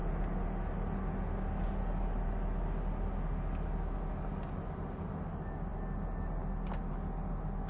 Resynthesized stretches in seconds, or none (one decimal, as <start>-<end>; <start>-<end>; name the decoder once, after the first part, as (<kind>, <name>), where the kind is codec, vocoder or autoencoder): none